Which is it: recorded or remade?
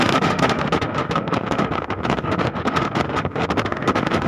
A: remade